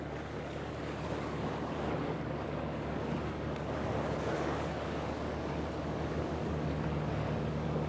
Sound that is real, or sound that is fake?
fake